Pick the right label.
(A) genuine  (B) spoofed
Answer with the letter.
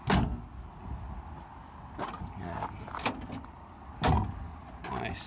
A